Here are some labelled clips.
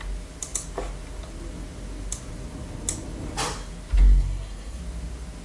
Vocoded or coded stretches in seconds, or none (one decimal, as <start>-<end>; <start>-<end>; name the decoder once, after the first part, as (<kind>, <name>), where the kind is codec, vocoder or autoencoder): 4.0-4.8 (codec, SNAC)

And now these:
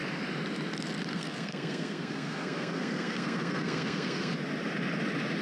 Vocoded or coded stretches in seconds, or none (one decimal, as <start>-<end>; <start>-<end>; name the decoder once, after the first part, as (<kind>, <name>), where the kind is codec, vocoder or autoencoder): 1.1-4.3 (codec, SNAC)

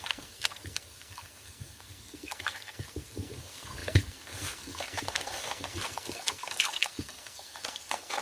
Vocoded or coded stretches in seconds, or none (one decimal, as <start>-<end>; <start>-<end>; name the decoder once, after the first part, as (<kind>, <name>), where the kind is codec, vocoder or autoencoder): 0.0-8.2 (codec, SNAC)

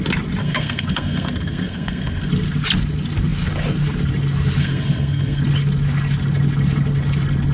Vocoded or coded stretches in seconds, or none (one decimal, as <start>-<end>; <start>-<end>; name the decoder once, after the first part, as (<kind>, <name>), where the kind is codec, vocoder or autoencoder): 0.4-2.3 (codec, SNAC); 4.6-5.4

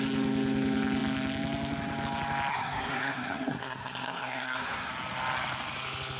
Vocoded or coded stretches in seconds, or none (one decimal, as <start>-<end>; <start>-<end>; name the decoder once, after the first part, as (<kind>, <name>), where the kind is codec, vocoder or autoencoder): 2.5-4.9 (codec, SNAC)

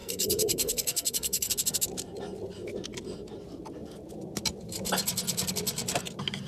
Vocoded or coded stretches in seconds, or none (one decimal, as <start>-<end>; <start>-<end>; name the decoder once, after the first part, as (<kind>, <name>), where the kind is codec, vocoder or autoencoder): 0.0-1.5 (codec, SNAC)

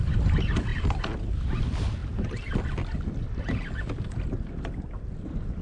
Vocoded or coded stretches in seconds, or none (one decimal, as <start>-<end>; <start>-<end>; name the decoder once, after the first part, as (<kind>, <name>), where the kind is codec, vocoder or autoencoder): none